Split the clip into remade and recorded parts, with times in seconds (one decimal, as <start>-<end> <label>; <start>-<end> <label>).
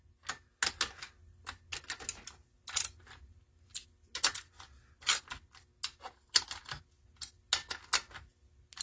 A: 0.0-8.8 recorded